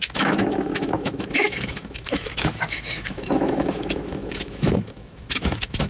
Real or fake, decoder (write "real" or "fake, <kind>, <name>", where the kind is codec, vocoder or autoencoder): fake, autoencoder, DAC-VAE